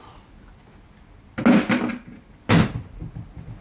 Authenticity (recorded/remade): recorded